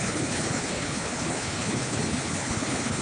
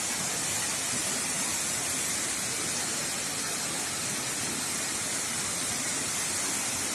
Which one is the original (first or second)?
second